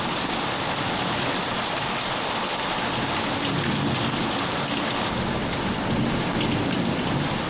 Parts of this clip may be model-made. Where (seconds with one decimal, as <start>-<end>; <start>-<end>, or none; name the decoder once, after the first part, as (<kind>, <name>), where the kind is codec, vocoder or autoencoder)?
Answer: none